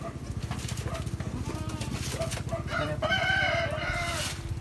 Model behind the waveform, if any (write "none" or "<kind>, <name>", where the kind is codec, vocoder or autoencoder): none